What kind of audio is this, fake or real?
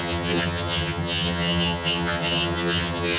fake